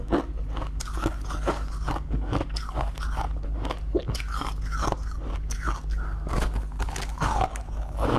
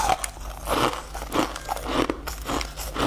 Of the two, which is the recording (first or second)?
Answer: second